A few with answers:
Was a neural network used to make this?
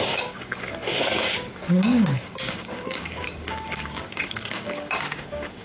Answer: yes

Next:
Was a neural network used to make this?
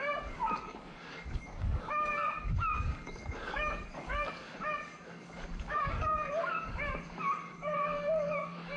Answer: yes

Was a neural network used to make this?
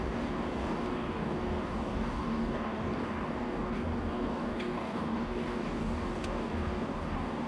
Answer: yes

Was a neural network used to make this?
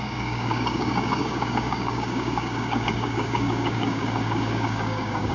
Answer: yes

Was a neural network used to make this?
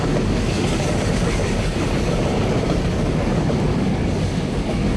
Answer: yes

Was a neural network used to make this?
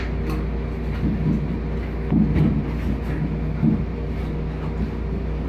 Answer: no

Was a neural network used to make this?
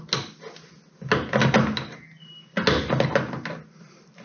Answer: no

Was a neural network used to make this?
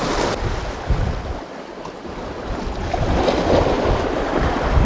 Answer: no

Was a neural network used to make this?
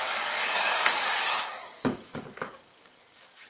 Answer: yes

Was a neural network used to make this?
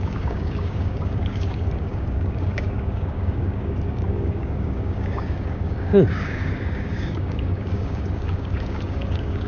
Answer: yes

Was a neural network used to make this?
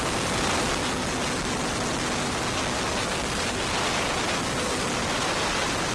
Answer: no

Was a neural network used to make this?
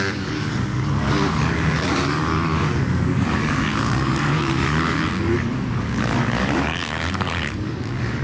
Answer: yes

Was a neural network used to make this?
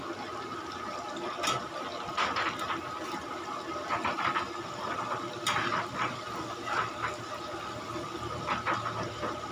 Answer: no